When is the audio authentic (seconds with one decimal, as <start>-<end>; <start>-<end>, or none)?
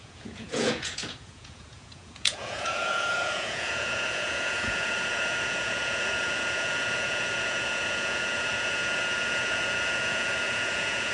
none